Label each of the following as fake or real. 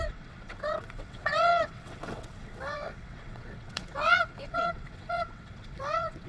fake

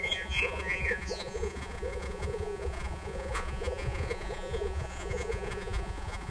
fake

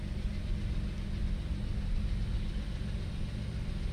real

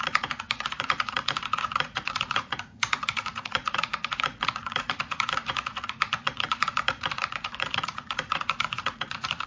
fake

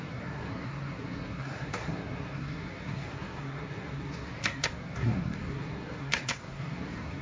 fake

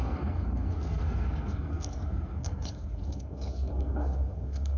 fake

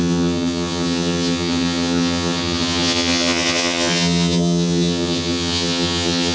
fake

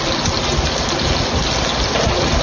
real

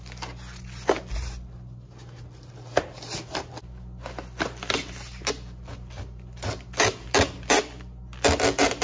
real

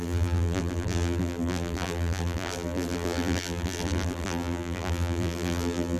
fake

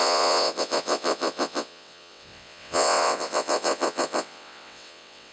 fake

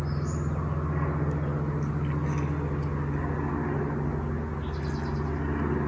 real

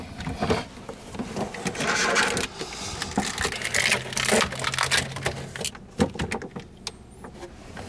real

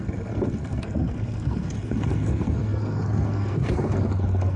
fake